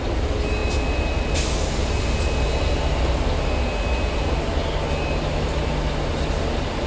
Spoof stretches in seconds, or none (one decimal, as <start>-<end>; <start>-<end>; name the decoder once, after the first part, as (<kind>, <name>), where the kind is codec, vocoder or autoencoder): none